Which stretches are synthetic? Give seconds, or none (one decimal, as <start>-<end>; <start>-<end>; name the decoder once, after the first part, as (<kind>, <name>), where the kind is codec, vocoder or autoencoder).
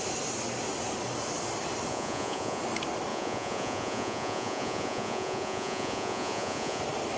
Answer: 1.9-2.6 (vocoder, Vocos); 3.1-6.8